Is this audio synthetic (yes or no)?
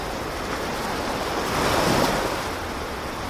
no